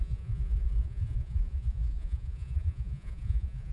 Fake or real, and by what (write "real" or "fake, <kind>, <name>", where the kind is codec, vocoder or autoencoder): fake, vocoder, Vocos